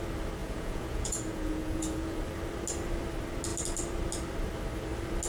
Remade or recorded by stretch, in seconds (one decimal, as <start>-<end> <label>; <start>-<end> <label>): 0.0-0.4 recorded; 0.4-2.2 remade; 2.2-5.3 recorded